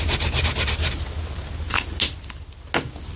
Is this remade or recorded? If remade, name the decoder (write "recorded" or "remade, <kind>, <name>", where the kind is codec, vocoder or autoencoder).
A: recorded